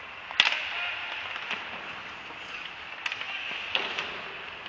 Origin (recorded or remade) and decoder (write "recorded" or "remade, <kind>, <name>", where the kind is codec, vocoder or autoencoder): recorded